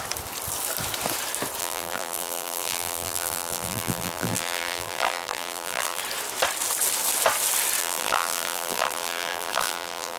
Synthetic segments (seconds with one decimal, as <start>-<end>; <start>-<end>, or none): 1.6-6.0; 7.8-10.2